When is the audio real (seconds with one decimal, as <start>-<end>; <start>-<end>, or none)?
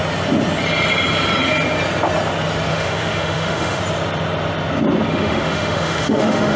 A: 0.0-2.7; 3.8-5.1